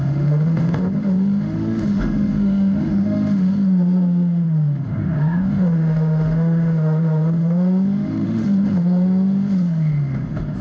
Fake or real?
fake